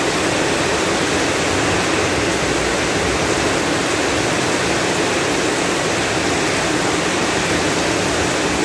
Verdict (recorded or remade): recorded